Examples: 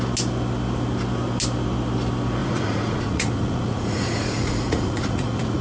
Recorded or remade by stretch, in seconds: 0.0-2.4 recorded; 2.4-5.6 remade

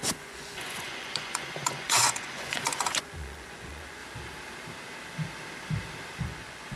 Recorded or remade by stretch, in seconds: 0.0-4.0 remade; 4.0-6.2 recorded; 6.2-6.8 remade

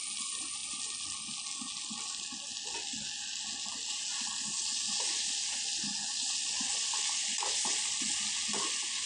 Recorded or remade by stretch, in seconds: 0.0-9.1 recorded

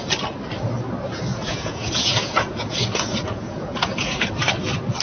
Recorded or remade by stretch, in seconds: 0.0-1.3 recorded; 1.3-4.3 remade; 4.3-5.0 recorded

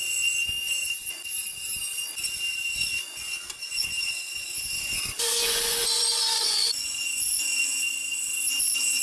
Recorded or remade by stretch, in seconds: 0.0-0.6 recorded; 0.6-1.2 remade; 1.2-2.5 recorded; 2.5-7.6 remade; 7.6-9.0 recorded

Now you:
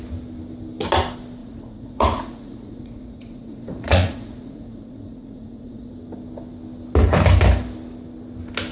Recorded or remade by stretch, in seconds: 0.0-1.4 recorded; 1.4-5.9 remade; 5.9-8.7 recorded

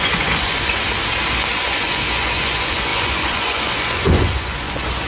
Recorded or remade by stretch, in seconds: 0.0-0.8 remade; 0.8-1.5 recorded; 1.5-5.1 remade